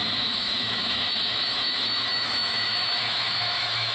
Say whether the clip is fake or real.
fake